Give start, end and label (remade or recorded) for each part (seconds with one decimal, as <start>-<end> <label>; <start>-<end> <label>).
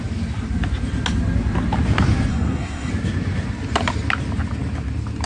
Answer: 0.0-2.3 recorded; 2.3-2.9 remade; 2.9-5.3 recorded